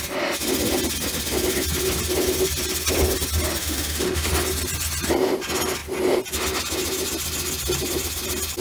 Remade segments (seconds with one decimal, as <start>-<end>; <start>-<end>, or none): 3.6-4.3